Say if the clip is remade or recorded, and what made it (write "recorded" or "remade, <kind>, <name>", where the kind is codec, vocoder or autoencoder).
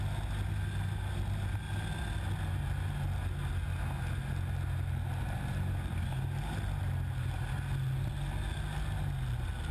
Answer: recorded